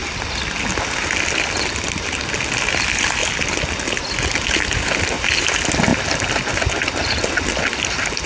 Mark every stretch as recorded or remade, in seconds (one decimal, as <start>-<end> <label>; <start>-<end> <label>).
0.0-8.3 recorded

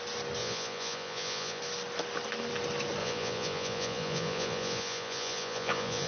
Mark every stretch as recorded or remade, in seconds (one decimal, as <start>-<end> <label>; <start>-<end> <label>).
0.0-0.4 recorded; 0.4-1.6 remade; 1.6-3.0 recorded; 3.0-6.1 remade

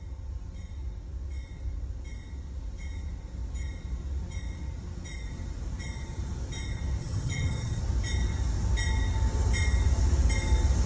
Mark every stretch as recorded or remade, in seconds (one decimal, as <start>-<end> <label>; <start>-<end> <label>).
0.0-7.0 recorded; 7.0-7.8 remade; 7.8-10.9 recorded

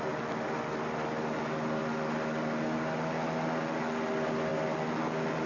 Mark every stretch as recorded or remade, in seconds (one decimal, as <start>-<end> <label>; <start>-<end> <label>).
0.0-5.5 recorded

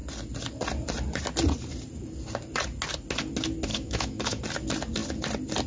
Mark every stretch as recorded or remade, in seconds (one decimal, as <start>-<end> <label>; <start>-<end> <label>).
0.0-3.7 recorded; 3.7-4.4 remade; 4.4-5.7 recorded

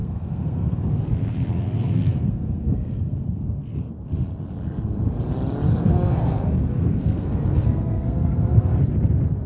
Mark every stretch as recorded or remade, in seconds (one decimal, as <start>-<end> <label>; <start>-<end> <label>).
0.0-3.9 remade; 3.9-5.7 recorded; 5.7-8.8 remade; 8.8-9.5 recorded

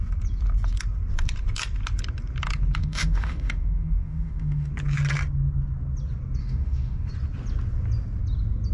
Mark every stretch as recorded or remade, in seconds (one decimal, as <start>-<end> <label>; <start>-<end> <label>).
0.0-2.8 recorded; 2.8-4.7 remade; 4.7-6.4 recorded; 6.4-7.1 remade; 7.1-8.7 recorded

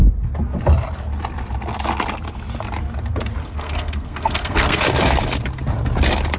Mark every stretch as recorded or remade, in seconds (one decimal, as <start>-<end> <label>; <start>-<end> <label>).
0.0-3.4 recorded; 3.4-4.8 remade; 4.8-6.4 recorded